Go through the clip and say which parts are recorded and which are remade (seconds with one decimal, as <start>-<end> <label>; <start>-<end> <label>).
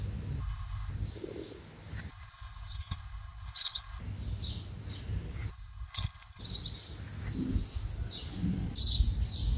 0.0-0.4 recorded; 0.4-0.9 remade; 0.9-2.1 recorded; 2.1-4.0 remade; 4.0-5.5 recorded; 5.5-6.4 remade; 6.4-9.6 recorded